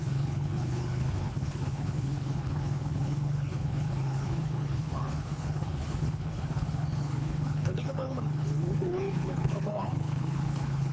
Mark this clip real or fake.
fake